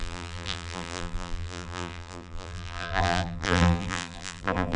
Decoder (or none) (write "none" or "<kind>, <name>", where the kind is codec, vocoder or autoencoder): vocoder, BigVGAN v2